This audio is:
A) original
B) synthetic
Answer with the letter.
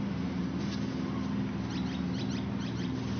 A